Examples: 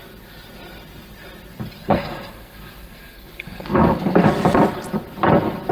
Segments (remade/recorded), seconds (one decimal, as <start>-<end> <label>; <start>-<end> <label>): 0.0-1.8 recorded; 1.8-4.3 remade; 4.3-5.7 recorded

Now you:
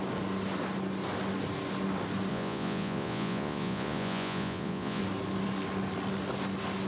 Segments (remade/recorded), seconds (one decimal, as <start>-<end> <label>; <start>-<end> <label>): 0.0-2.3 recorded; 2.3-5.0 remade; 5.0-6.9 recorded

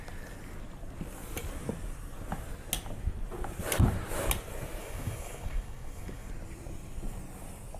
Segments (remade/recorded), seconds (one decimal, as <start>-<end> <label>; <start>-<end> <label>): 0.0-4.8 recorded; 4.8-6.3 remade; 6.3-7.8 recorded